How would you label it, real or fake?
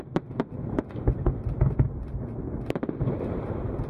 real